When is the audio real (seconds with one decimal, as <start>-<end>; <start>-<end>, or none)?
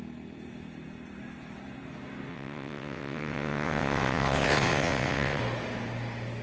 0.0-2.3; 5.4-6.4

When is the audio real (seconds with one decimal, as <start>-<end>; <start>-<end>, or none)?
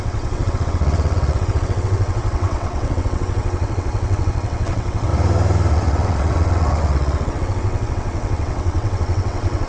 5.1-5.7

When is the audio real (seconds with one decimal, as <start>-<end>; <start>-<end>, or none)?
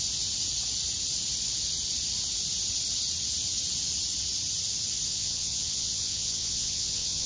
0.0-5.1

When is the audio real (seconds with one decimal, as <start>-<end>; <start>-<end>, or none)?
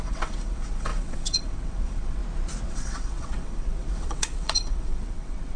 2.2-2.7